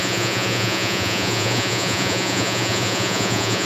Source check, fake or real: fake